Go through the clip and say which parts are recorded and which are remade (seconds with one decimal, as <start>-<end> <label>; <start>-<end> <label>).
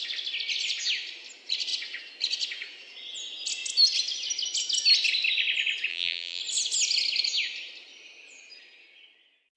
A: 0.0-5.9 recorded; 5.9-6.4 remade; 6.4-9.6 recorded